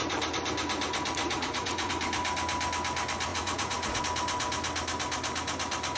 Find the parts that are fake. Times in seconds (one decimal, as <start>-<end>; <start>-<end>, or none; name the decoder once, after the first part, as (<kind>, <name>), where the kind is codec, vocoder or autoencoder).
1.2-1.9 (vocoder, Vocos); 3.3-4.0